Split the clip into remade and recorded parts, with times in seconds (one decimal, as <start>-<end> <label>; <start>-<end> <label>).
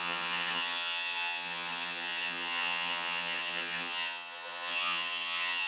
0.0-5.7 remade